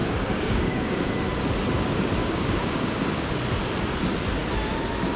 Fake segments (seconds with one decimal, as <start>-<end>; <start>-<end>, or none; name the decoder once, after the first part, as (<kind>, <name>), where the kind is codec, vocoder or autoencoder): 0.0-1.1 (codec, DAC); 2.2-3.3